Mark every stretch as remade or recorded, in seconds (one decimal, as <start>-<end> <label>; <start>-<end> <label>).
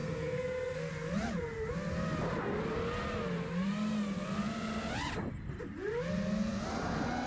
0.0-0.9 remade; 0.9-7.3 recorded